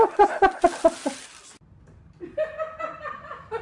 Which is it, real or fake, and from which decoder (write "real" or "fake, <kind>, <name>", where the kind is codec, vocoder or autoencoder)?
real